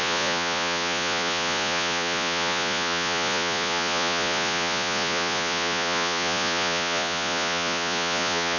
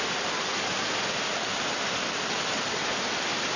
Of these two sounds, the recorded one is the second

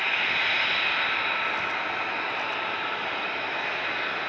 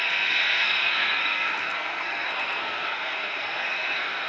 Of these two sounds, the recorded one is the first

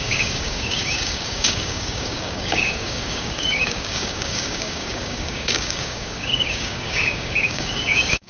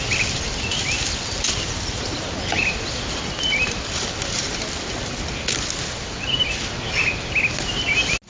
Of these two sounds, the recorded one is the second